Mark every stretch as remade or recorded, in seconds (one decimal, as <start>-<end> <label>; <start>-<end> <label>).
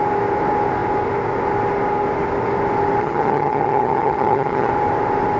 0.0-3.0 recorded; 3.0-4.7 remade; 4.7-5.4 recorded